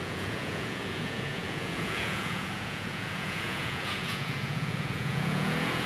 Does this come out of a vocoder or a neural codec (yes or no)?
yes